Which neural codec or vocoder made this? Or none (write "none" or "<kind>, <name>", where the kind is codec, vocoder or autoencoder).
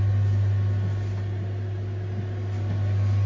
none